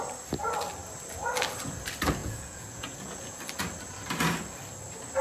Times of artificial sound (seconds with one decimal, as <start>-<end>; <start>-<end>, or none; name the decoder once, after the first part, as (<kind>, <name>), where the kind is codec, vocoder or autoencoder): 2.2-3.4 (vocoder, Vocos)